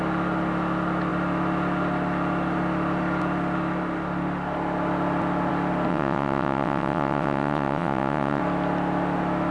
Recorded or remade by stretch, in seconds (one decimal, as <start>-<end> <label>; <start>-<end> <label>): 0.0-5.9 recorded; 5.9-8.4 remade; 8.4-9.5 recorded